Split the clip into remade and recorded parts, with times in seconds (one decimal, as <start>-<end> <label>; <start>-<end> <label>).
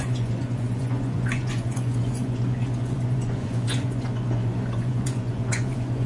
0.0-6.1 remade